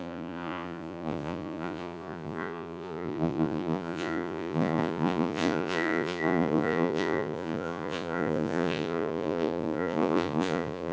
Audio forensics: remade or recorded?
remade